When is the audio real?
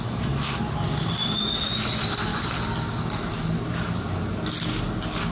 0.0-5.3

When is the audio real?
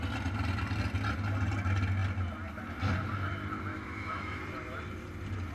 0.0-3.7; 4.4-5.5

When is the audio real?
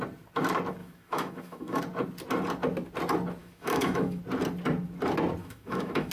0.0-0.8; 1.8-3.4; 4.2-5.4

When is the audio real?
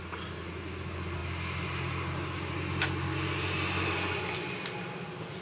0.0-5.4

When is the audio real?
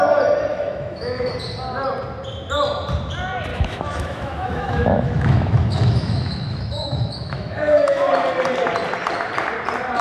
0.0-0.5; 1.3-3.5; 8.1-10.0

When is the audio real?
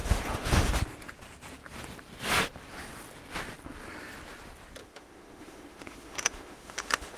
0.7-4.8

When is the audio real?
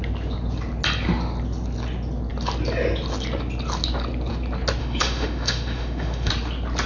0.0-4.8; 6.3-6.9